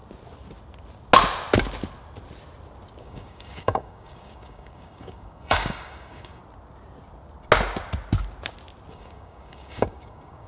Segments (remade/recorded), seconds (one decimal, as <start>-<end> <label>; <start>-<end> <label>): 0.0-3.0 recorded; 3.0-6.4 remade; 6.4-8.9 recorded; 8.9-10.5 remade